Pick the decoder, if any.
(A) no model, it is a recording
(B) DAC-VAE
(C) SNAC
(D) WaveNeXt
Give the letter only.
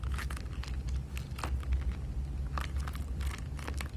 A